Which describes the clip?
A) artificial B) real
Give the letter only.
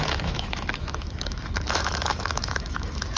A